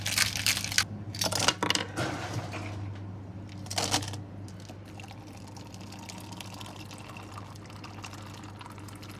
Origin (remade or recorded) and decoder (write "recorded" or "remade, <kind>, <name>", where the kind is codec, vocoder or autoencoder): recorded